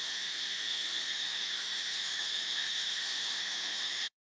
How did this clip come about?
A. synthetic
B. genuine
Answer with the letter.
A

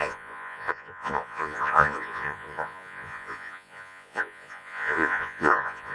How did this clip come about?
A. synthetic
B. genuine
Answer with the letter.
A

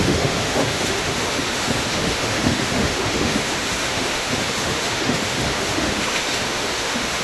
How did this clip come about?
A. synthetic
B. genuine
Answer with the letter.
A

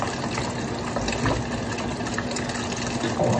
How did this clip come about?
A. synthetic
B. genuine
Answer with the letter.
B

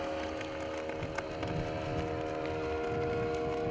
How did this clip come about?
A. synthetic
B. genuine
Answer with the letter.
B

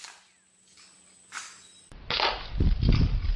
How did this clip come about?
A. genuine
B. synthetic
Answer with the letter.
A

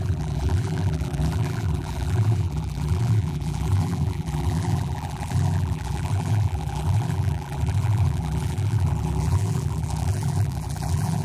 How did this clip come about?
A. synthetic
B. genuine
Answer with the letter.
A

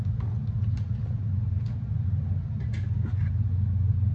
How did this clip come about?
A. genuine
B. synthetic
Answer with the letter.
A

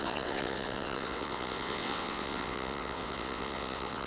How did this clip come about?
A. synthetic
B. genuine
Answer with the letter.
A